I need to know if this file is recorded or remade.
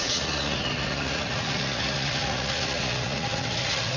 remade